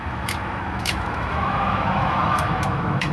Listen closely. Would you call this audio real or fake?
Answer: fake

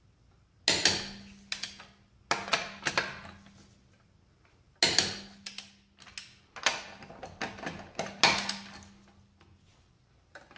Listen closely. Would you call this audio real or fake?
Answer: real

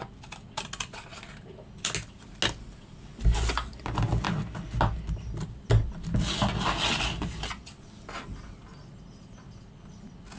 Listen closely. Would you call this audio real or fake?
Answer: real